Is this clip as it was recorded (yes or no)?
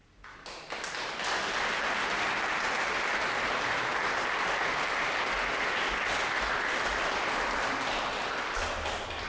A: yes